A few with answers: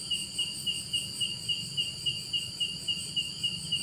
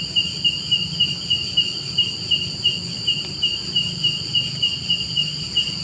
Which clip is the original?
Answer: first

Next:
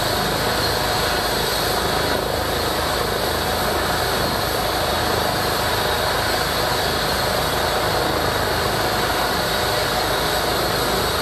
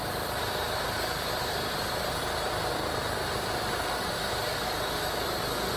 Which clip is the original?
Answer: first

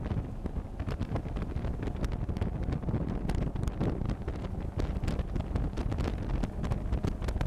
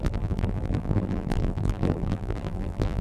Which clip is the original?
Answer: first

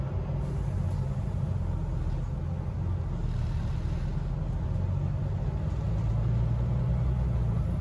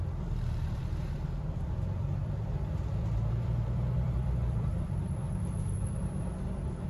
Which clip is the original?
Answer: first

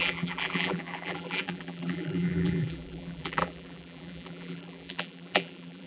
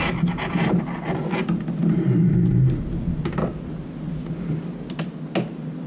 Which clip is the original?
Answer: second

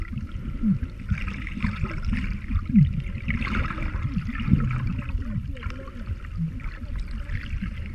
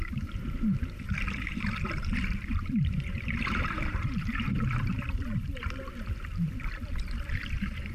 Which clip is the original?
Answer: first